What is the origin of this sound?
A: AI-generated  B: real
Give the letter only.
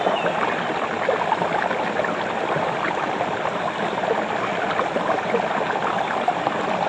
B